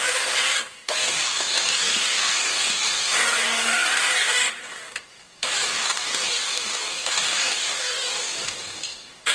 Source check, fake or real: fake